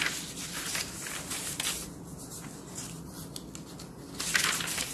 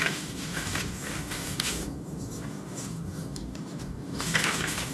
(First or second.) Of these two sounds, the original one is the first